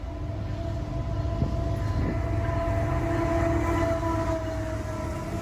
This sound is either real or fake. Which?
real